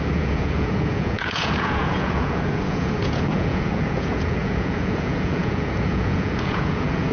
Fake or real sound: fake